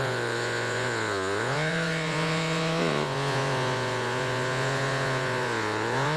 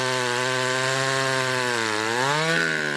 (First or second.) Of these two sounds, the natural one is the second